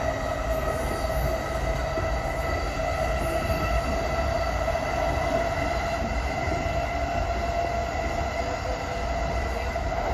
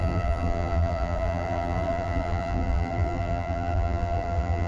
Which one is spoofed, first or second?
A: second